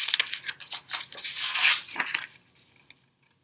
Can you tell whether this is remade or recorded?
recorded